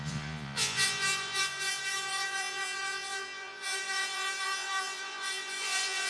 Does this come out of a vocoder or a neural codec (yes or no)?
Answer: yes